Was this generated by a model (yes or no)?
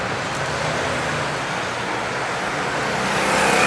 no